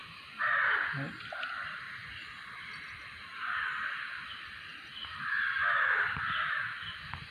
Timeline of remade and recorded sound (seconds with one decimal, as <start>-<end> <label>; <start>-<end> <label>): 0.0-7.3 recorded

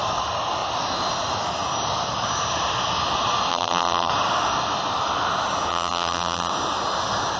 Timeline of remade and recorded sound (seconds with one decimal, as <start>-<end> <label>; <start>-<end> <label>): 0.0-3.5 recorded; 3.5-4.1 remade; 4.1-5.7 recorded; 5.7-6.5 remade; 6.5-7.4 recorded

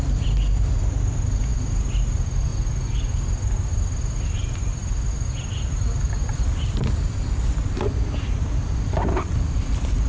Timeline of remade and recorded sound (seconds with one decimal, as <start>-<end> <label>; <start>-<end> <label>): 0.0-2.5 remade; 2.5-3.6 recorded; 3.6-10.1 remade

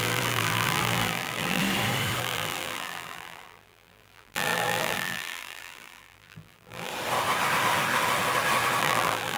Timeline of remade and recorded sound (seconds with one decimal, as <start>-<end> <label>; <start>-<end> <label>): 0.0-1.6 remade; 1.6-2.2 recorded; 2.2-6.9 remade; 6.9-8.8 recorded; 8.8-9.4 remade